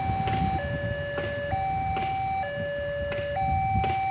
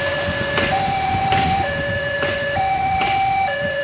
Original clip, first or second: first